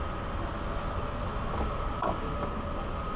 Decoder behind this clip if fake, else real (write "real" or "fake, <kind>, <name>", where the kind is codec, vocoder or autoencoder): real